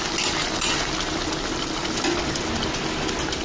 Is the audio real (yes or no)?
yes